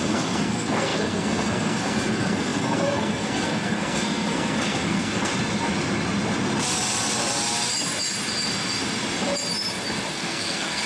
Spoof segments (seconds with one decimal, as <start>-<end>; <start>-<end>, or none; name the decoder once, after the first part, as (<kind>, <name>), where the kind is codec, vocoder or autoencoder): 0.0-5.3 (codec, SNAC); 10.1-10.9